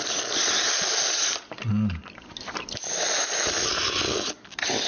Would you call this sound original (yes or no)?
yes